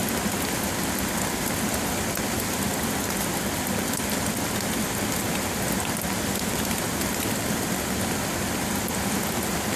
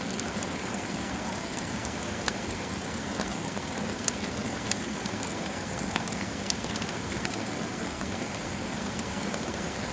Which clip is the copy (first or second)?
second